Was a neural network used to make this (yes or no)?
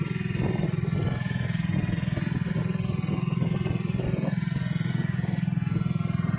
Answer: no